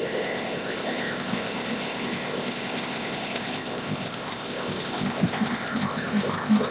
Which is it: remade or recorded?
remade